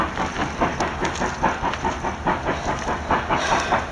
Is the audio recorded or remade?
recorded